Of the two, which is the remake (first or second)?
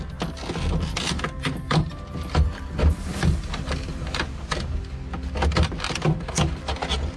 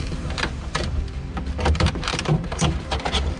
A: second